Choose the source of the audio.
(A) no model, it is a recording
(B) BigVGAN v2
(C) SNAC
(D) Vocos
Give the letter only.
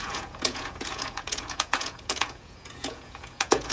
D